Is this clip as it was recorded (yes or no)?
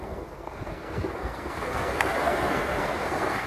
no